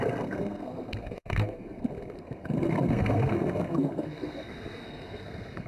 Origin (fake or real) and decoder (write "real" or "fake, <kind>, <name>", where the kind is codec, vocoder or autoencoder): fake, codec, SNAC